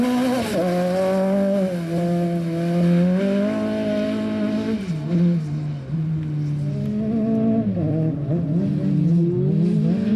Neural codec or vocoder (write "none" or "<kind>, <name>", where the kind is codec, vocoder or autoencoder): none